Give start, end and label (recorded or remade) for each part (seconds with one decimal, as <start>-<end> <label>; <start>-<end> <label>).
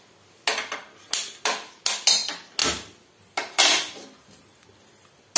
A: 0.0-5.4 recorded